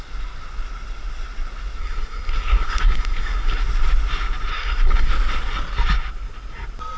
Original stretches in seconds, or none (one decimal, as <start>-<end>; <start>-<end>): 0.0-1.8; 3.6-4.5; 5.1-7.0